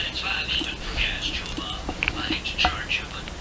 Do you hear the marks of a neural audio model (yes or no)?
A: no